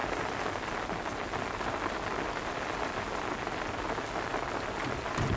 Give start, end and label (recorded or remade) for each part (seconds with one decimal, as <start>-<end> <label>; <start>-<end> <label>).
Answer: 0.0-5.4 recorded